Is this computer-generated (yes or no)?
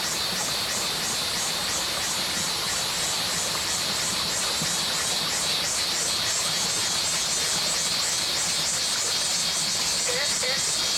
no